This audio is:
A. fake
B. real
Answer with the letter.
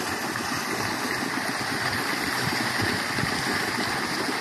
B